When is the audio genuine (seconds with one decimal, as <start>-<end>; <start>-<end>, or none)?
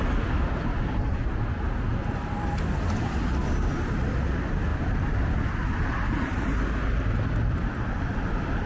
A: 0.0-8.7